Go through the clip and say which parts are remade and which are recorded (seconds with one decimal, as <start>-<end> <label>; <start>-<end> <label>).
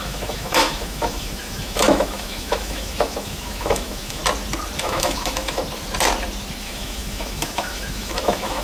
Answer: 0.0-4.2 remade; 4.2-4.8 recorded; 4.8-5.6 remade; 5.6-6.6 recorded; 6.6-8.6 remade